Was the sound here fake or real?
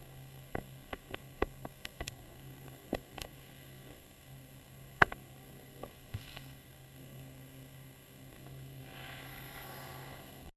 fake